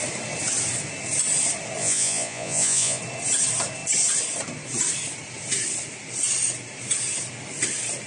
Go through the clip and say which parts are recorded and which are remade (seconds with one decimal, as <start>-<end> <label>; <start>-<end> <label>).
0.0-1.8 recorded; 1.8-3.0 remade; 3.0-8.1 recorded

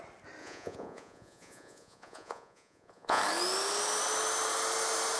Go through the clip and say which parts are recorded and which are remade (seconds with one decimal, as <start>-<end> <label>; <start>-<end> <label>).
0.0-0.4 recorded; 0.4-3.2 remade; 3.2-5.2 recorded

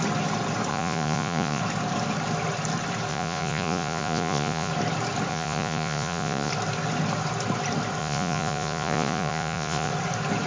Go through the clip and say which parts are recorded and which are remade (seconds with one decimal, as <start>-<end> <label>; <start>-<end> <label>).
0.0-0.7 recorded; 0.7-1.6 remade; 1.6-3.1 recorded; 3.1-4.7 remade; 4.7-5.3 recorded; 5.3-6.5 remade; 6.5-8.0 recorded; 8.0-9.9 remade; 9.9-10.5 recorded